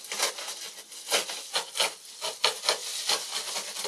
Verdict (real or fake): real